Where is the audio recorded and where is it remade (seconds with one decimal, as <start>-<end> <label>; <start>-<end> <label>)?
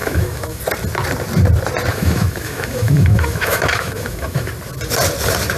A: 0.0-0.6 remade; 0.6-1.9 recorded; 1.9-4.5 remade; 4.5-5.6 recorded